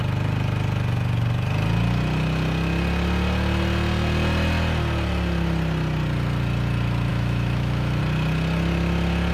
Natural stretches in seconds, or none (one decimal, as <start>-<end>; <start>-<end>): 0.0-7.1; 8.0-9.3